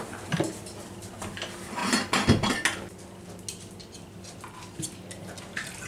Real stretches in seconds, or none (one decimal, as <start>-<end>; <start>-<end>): 0.0-5.9